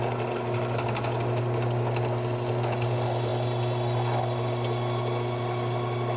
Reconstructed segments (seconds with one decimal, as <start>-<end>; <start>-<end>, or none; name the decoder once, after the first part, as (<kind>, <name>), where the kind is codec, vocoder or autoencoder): none